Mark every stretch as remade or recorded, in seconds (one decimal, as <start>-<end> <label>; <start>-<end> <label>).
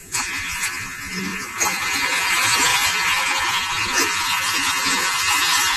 0.0-5.8 remade